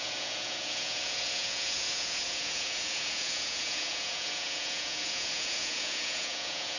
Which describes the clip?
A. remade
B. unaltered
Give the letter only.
A